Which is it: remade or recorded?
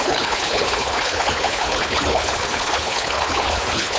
remade